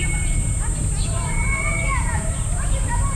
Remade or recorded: recorded